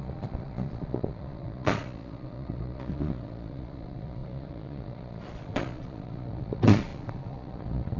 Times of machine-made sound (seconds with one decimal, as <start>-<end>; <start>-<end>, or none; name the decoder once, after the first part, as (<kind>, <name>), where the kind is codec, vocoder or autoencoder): 0.0-8.0 (vocoder, Vocos)